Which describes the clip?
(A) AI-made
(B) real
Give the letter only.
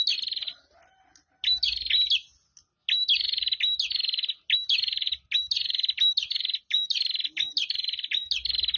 B